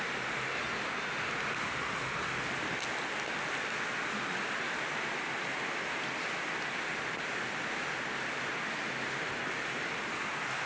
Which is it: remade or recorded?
recorded